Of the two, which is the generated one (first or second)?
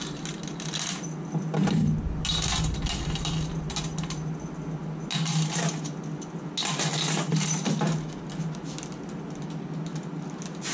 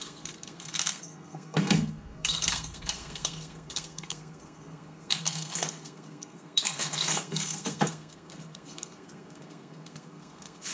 second